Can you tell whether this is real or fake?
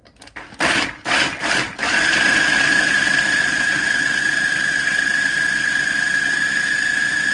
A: real